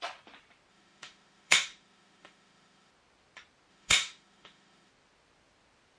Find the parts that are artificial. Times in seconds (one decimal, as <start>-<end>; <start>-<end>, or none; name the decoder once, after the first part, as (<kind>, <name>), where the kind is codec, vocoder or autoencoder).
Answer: 0.7-2.9 (autoencoder, DAC-VAE); 3.7-4.9